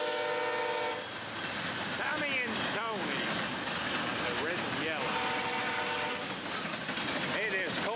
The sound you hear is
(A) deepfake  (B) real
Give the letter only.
B